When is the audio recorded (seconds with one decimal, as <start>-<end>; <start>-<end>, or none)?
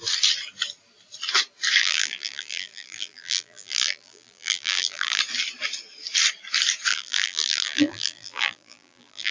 0.0-1.8; 5.2-6.9